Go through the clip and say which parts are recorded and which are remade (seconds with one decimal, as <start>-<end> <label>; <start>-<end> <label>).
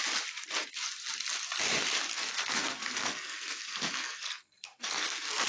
0.0-2.1 recorded; 2.1-5.5 remade